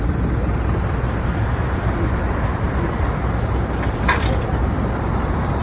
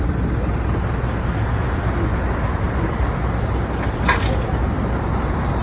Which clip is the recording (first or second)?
second